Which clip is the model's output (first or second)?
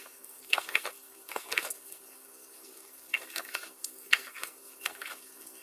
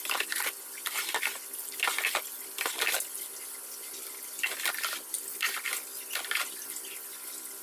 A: first